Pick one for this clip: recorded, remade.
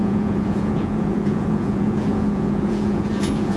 remade